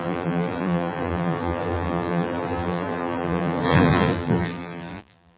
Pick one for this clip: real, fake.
fake